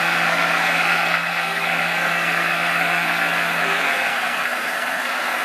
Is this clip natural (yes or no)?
no